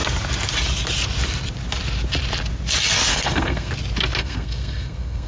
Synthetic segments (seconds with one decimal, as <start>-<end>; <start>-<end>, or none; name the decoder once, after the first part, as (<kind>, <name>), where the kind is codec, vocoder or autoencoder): 3.1-3.7 (codec, SNAC); 4.2-5.3